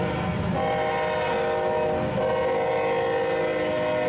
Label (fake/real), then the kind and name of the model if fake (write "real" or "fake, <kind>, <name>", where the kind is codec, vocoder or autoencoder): real